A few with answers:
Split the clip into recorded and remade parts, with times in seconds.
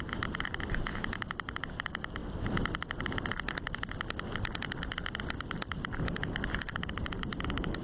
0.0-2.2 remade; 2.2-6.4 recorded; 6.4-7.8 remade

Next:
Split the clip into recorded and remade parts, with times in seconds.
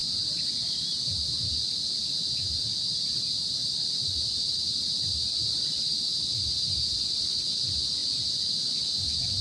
0.0-3.6 recorded; 3.6-6.7 remade; 6.7-9.4 recorded